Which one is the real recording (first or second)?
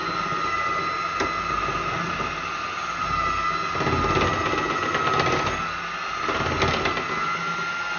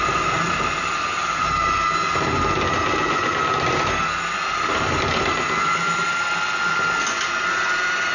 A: first